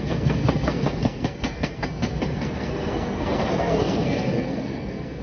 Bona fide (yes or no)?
no